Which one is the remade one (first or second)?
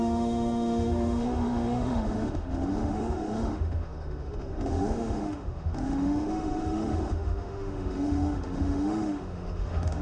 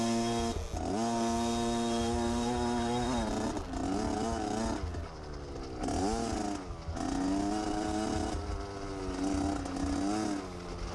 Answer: first